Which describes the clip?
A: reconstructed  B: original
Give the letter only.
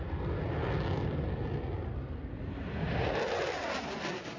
B